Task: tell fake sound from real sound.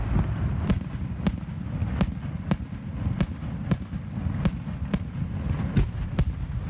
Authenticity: real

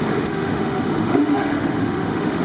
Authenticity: fake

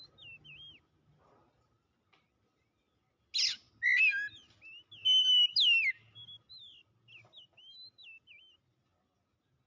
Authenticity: real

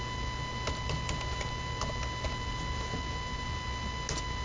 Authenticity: real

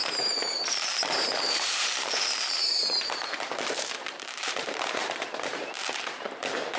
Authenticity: fake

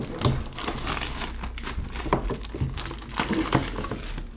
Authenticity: real